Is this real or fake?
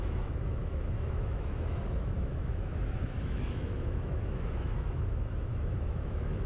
fake